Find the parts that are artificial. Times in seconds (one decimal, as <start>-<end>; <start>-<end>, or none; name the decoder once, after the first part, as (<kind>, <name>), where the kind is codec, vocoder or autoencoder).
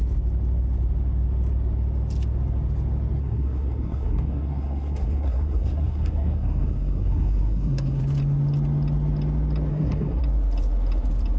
3.2-8.0 (codec, SNAC); 9.7-10.2